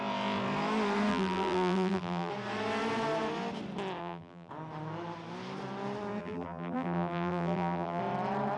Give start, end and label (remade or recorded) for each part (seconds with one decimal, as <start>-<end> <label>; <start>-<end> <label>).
0.0-1.1 recorded; 1.1-2.3 remade; 2.3-4.0 recorded; 4.0-4.5 remade; 4.5-6.2 recorded; 6.2-8.0 remade; 8.0-8.6 recorded